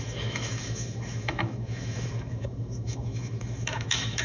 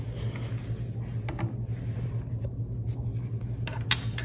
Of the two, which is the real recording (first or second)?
second